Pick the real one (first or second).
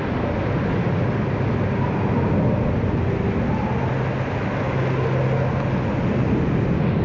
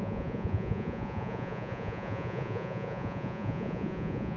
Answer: first